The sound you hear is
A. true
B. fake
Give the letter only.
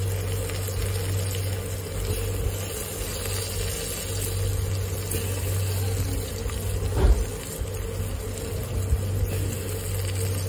A